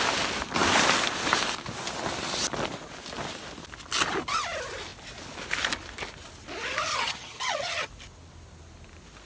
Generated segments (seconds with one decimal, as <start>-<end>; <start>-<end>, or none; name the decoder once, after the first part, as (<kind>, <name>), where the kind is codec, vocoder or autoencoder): 6.9-7.9 (vocoder, HiFi-GAN)

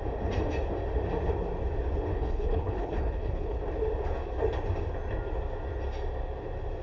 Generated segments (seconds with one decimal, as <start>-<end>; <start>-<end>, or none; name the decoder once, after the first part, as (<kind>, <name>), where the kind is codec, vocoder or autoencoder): 2.1-3.6 (codec, HILCodec)

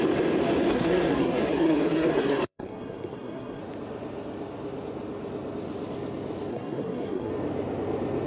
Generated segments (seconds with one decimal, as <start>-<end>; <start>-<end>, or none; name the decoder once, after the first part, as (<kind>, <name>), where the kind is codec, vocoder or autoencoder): 0.7-3.6 (codec, SNAC); 6.5-7.3

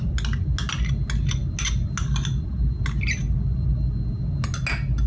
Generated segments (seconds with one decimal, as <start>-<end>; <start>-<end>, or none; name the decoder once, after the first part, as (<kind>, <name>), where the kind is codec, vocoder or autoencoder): none

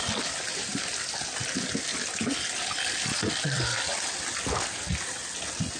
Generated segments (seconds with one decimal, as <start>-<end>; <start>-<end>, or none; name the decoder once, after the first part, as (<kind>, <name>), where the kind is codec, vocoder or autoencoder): none